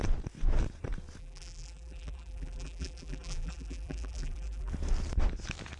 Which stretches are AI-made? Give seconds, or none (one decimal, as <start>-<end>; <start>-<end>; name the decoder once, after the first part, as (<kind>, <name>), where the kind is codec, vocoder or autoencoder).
1.2-4.7 (vocoder, BigVGAN v2)